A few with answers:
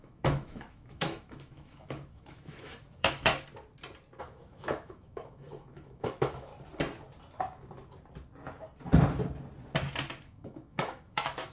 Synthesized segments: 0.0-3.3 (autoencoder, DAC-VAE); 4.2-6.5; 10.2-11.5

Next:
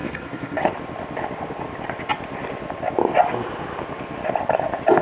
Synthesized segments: 0.0-0.6 (codec, SNAC)

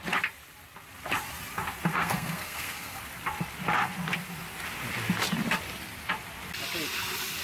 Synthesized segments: 1.9-3.0 (codec, SNAC)

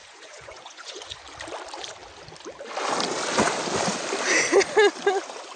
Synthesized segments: 0.0-1.2 (vocoder, Vocos)

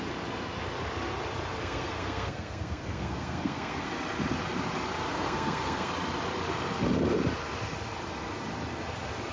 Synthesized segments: 1.6-3.9 (codec, SNAC); 5.1-5.9